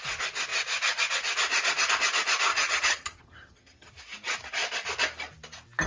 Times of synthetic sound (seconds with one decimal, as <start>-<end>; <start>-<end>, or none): 2.5-3.9